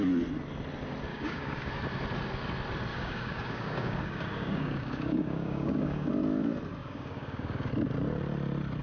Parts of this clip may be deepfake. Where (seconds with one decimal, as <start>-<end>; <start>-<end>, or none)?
1.1-1.7; 2.9-6.1; 6.8-7.7